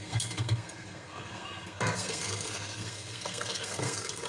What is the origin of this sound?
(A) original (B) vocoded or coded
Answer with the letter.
B